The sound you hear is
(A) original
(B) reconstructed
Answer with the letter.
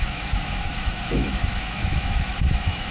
B